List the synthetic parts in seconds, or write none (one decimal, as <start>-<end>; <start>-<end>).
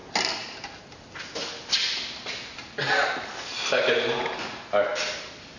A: none